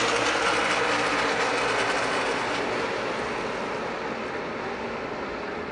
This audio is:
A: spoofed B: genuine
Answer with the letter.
B